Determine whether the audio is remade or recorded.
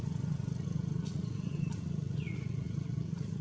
remade